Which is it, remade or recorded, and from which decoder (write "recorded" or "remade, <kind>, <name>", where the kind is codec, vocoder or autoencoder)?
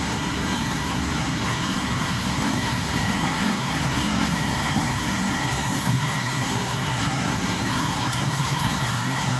remade, codec, SNAC